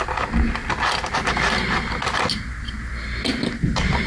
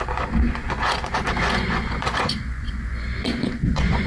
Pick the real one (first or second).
first